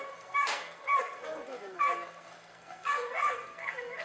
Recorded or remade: remade